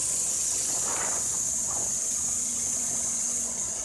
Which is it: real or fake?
fake